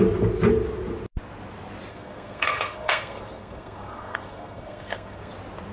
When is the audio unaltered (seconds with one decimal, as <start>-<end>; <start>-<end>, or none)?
0.0-1.9; 5.3-5.7